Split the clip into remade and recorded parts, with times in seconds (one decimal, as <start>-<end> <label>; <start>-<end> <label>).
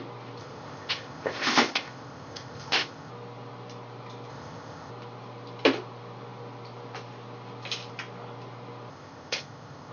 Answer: 0.0-0.4 recorded; 0.4-3.1 remade; 3.1-4.3 recorded; 4.3-4.9 remade; 4.9-8.9 recorded; 8.9-9.9 remade